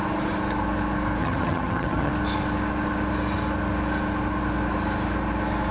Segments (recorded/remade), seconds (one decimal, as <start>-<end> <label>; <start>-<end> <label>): 0.0-1.2 recorded; 1.2-2.1 remade; 2.1-5.7 recorded